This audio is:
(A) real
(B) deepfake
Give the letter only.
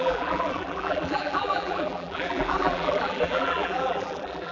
B